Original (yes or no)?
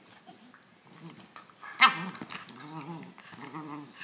yes